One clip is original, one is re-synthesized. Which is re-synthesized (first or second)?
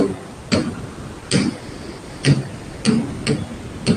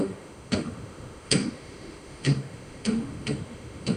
second